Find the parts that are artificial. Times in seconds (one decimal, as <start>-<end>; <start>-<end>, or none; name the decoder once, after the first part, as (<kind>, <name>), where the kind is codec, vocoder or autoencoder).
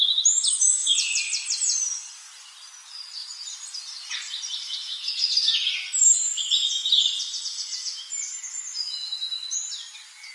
0.8-2.1 (vocoder, BigVGAN v2); 3.2-5.9; 8.7-9.7